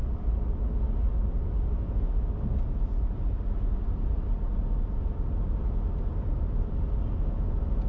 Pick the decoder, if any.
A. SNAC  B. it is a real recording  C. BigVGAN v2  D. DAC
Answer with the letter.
B